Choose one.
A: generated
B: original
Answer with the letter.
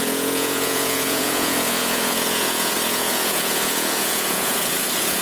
A